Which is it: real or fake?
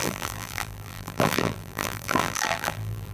fake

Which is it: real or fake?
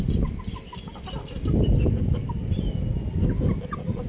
real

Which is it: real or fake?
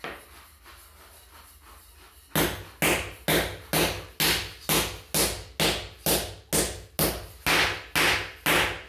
real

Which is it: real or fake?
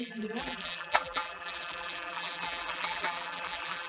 fake